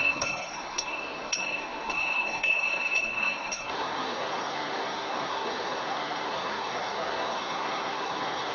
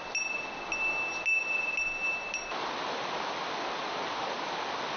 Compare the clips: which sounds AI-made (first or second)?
first